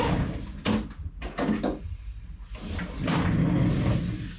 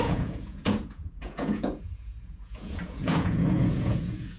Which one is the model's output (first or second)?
second